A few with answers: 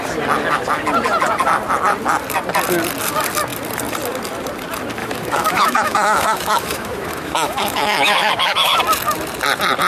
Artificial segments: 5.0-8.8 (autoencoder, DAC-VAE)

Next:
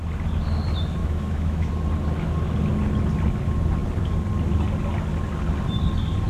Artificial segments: 1.0-1.7 (autoencoder, DAC-VAE)

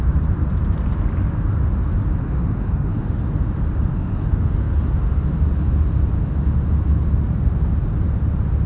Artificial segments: 2.2-3.2 (autoencoder, DAC-VAE); 3.9-5.3

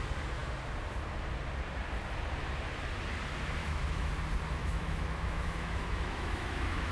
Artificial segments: 3.6-4.1 (autoencoder, DAC-VAE); 4.6-6.9

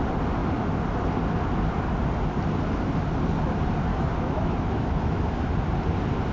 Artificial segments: 3.9-5.5 (autoencoder, DAC-VAE)

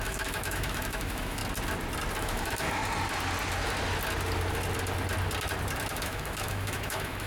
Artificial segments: 0.0-1.4 (autoencoder, DAC-VAE); 2.2-2.8; 5.9-7.3